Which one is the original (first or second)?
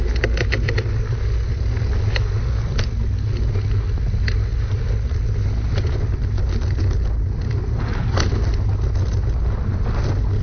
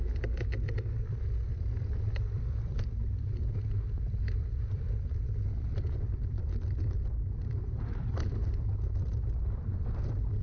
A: first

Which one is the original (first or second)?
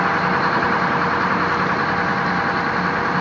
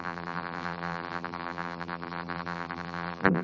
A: first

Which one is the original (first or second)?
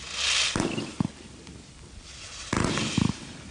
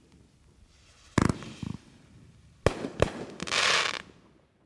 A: second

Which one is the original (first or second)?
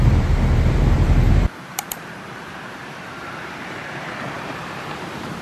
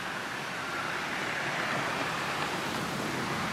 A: second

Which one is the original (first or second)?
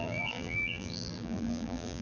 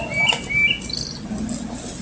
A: second